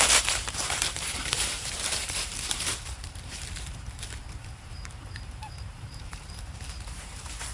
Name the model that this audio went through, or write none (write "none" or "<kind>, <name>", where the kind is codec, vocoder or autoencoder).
vocoder, BigVGAN v2